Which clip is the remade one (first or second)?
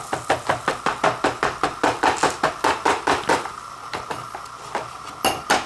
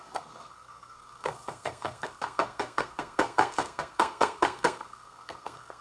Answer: second